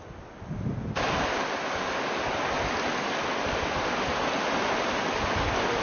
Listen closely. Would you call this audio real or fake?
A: real